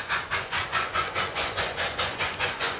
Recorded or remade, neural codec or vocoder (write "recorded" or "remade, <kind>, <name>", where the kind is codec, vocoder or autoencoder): remade, vocoder, Vocos